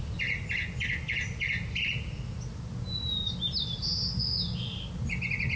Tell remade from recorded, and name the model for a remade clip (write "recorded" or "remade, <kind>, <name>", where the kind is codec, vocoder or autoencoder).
recorded